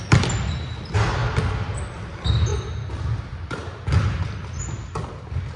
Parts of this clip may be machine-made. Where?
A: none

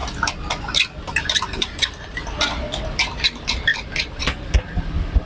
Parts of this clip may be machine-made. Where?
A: none